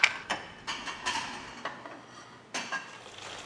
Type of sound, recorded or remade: recorded